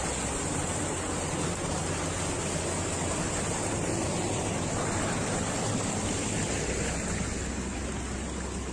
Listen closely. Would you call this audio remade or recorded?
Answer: recorded